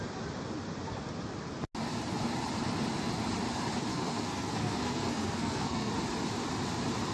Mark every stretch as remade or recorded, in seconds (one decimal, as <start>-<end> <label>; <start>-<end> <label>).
0.0-3.9 recorded; 3.9-5.9 remade; 5.9-7.1 recorded